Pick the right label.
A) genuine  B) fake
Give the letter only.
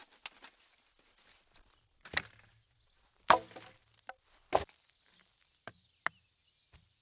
A